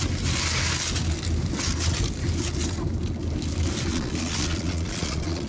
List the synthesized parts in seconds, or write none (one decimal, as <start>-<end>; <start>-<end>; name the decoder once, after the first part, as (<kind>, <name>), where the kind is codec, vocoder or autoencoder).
3.9-5.5 (vocoder, Vocos)